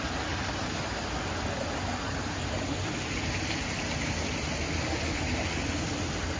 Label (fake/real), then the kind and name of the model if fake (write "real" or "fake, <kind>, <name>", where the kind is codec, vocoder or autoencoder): real